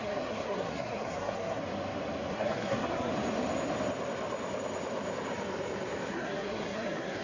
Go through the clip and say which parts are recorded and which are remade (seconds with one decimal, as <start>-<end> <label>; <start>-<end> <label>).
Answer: 0.0-1.6 remade; 1.6-2.3 recorded; 2.3-3.1 remade; 3.1-6.1 recorded; 6.1-7.2 remade